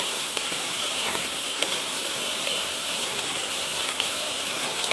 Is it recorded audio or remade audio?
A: remade